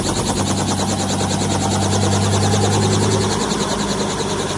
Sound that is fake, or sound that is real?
real